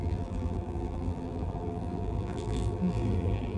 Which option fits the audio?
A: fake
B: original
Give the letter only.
A